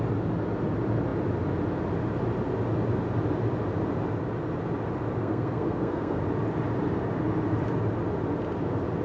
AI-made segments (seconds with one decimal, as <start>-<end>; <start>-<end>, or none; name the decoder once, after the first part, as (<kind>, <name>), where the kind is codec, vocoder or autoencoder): 5.2-6.2 (codec, SNAC)